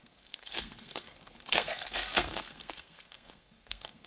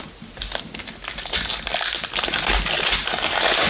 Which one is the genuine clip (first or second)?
second